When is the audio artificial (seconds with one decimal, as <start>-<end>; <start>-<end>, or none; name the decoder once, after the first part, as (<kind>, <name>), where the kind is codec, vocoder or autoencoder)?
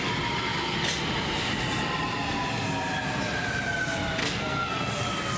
4.2-5.0 (codec, SNAC)